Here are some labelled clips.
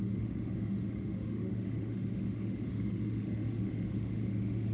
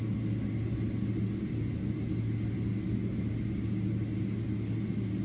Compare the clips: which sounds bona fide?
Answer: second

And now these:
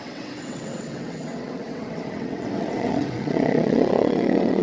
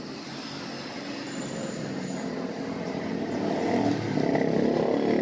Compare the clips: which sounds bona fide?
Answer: second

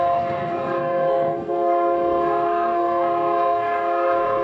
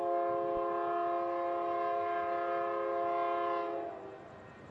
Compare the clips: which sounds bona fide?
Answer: second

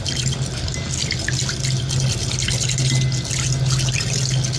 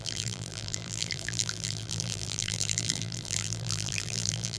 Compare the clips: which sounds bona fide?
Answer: first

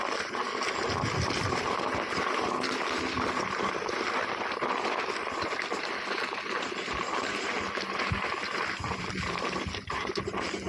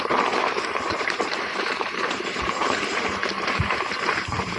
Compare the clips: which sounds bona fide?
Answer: first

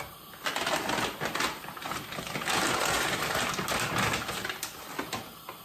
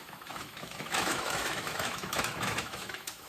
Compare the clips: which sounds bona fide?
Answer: first